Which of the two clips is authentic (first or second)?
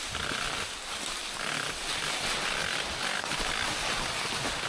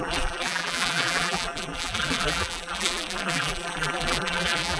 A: first